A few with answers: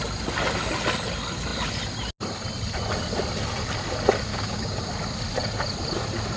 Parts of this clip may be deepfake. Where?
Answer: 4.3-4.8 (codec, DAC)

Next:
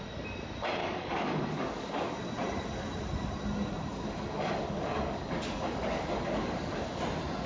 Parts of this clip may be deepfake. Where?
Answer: 0.8-2.1 (codec, DAC); 3.9-7.0

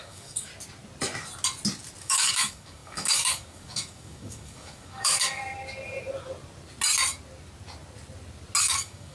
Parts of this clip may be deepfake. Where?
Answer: 0.0-0.5 (codec, DAC); 2.0-5.4; 8.6-9.1

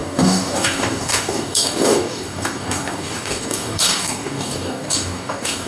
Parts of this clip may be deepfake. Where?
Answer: 0.0-5.7 (codec, DAC)

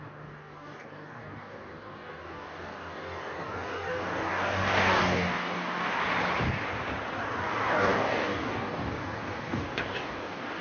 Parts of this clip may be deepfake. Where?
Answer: 0.0-6.0 (codec, DAC); 7.1-10.6

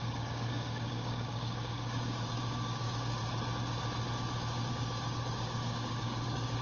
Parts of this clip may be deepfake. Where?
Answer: 0.0-3.2 (codec, DAC); 4.7-6.6

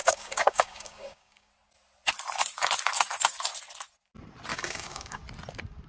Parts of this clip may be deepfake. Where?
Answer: 0.0-1.5 (codec, DAC); 4.5-5.2

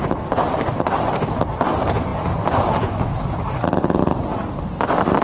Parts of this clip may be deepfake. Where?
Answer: none